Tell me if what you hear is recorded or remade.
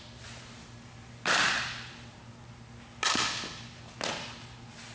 recorded